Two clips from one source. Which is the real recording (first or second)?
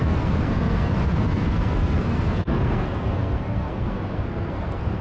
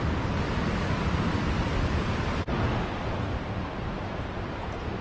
second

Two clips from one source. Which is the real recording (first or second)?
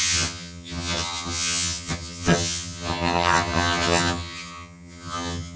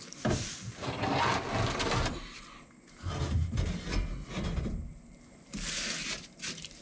second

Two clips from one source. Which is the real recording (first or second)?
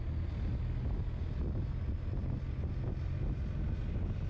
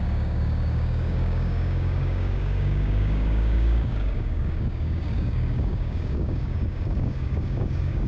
first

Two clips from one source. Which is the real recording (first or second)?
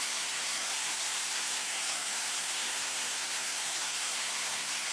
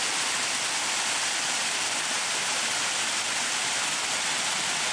second